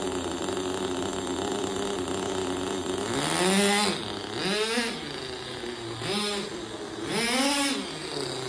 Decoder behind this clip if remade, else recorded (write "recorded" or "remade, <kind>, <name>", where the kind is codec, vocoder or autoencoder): recorded